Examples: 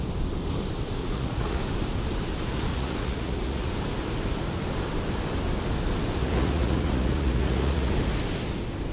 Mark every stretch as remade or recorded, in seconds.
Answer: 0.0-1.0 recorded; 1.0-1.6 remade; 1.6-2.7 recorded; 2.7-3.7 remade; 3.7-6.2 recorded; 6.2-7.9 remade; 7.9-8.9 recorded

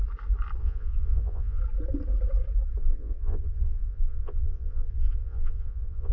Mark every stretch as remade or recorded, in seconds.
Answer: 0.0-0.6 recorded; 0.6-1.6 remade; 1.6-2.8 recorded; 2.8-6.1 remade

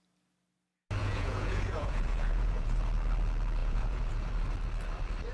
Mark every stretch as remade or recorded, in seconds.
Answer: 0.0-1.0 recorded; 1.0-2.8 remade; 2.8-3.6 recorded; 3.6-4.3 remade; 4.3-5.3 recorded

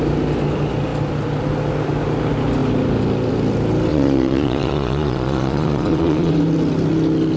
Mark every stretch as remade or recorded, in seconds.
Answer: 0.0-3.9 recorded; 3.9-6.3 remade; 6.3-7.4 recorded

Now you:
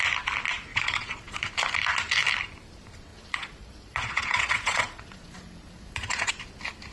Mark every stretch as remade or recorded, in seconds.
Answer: 0.0-0.7 recorded; 0.7-1.5 remade; 1.5-3.1 recorded; 3.1-6.3 remade; 6.3-6.9 recorded